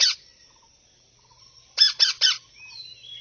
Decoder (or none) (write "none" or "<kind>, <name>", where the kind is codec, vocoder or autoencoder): none